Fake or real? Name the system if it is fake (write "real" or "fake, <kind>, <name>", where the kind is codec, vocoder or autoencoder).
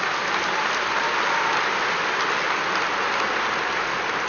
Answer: real